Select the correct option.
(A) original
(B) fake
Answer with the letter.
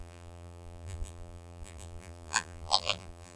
B